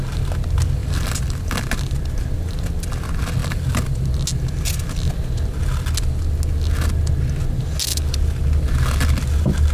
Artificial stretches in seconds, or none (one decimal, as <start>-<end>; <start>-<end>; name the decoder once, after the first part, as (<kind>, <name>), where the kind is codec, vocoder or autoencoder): 0.8-1.8 (vocoder, BigVGAN v2); 3.4-4.0; 7.9-8.4